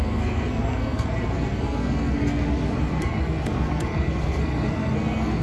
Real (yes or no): no